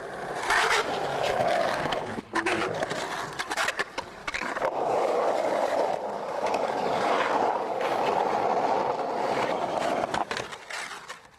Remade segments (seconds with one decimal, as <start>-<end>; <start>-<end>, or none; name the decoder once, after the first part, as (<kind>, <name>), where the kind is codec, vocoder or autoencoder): 1.1-2.2 (codec, DAC); 4.2-7.8